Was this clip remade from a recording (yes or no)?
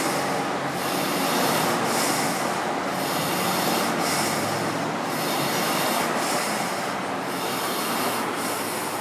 no